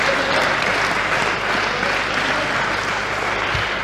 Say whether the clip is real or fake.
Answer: real